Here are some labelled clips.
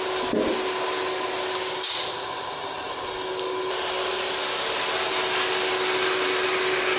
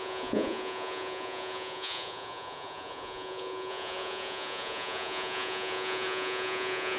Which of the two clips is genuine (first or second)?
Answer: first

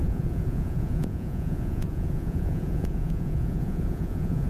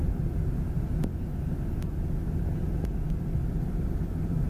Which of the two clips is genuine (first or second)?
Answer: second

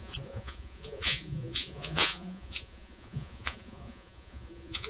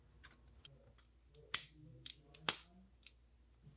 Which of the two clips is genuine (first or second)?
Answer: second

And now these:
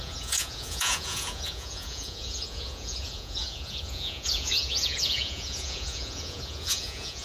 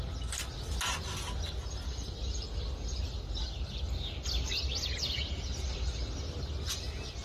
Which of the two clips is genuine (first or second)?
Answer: second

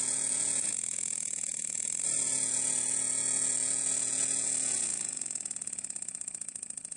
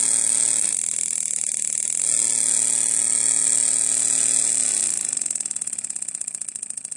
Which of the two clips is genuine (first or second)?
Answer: second